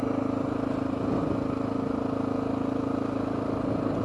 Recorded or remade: recorded